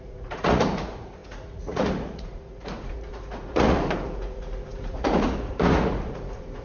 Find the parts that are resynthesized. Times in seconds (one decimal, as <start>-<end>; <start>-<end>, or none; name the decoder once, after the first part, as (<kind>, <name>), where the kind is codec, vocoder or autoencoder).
0.0-6.6 (vocoder, Vocos)